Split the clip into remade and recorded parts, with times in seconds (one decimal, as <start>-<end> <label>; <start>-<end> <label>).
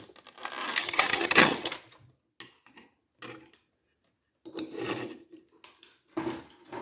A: 0.0-0.8 recorded; 0.8-1.7 remade; 1.7-6.8 recorded